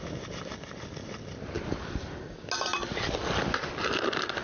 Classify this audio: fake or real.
real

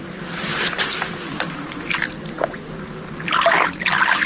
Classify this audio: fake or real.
fake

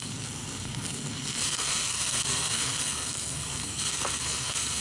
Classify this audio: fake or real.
fake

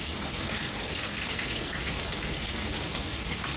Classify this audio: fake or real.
fake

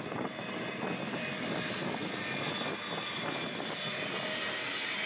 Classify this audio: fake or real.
real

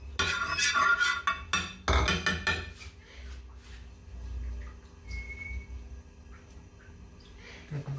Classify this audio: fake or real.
real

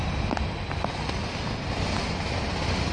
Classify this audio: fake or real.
real